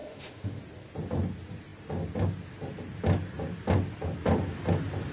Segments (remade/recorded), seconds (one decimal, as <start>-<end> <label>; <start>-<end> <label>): 0.0-0.6 remade; 0.6-5.1 recorded